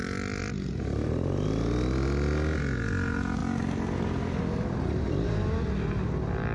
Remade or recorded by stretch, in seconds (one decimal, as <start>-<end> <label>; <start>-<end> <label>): 0.0-6.5 recorded